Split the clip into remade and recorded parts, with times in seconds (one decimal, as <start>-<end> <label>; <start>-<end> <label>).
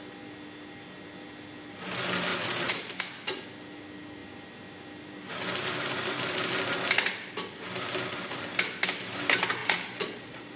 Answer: 0.0-2.3 recorded; 2.3-3.0 remade; 3.0-9.6 recorded; 9.6-10.6 remade